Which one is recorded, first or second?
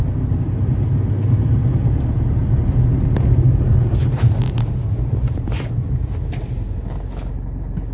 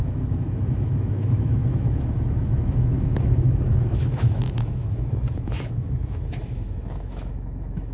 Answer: first